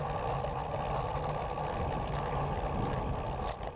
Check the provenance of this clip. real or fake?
real